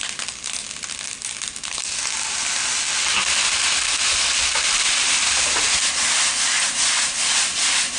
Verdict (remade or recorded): recorded